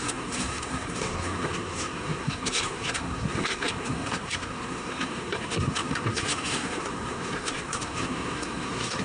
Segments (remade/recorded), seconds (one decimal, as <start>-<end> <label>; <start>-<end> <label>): 0.0-9.0 remade